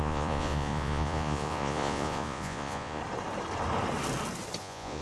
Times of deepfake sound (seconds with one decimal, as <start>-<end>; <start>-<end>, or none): 0.0-3.0; 4.6-5.0